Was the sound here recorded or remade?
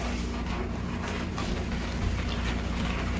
recorded